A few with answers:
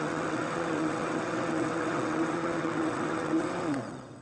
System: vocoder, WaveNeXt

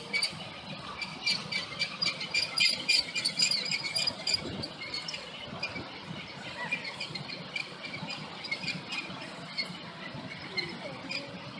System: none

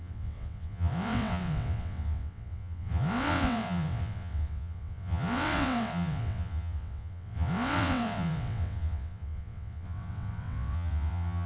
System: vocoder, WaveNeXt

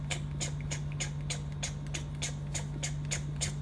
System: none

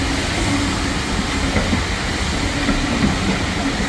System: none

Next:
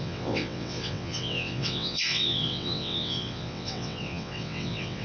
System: vocoder, WaveNeXt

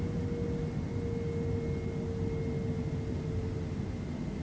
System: none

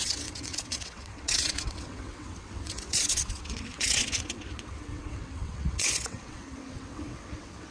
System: vocoder, WaveNeXt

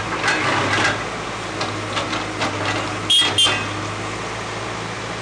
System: none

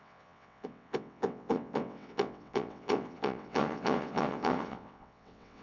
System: vocoder, WaveNeXt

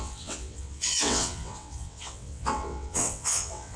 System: vocoder, WaveNeXt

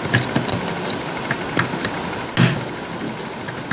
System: none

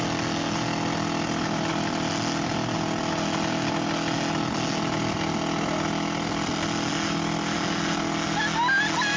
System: none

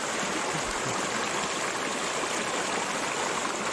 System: none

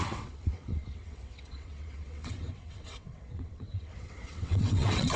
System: vocoder, WaveNeXt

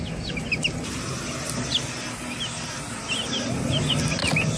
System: none